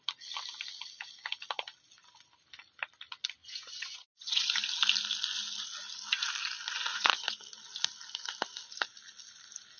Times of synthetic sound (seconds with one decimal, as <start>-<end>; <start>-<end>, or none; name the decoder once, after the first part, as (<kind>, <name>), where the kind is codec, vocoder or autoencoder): 3.4-4.4 (vocoder, Vocos); 6.9-7.4